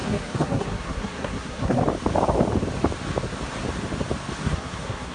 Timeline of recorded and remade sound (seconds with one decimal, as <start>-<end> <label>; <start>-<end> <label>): 0.0-1.8 remade; 1.8-4.4 recorded; 4.4-5.1 remade